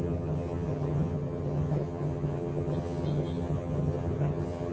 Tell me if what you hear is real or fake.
fake